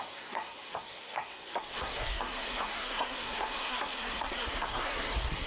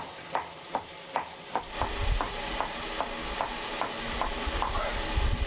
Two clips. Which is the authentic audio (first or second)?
second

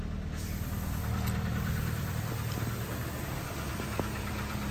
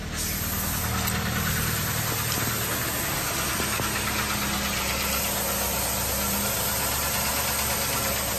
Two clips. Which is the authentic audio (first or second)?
second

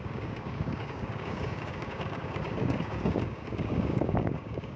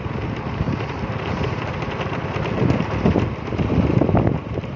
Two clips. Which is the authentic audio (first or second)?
second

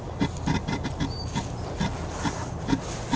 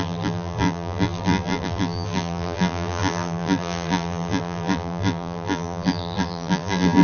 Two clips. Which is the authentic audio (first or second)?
first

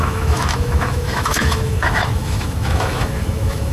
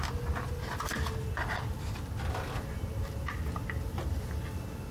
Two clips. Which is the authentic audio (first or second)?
second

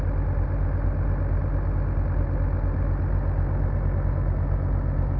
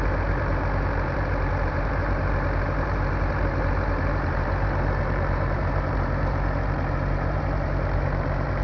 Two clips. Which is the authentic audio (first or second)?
first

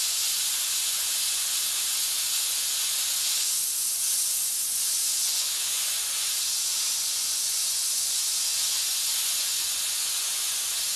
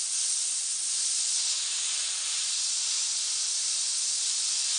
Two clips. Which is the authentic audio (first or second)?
second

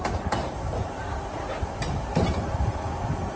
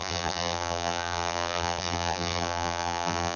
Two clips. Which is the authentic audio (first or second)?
first